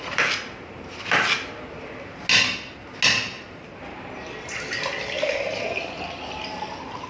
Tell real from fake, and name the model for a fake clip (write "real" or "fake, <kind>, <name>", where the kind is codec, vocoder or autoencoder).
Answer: real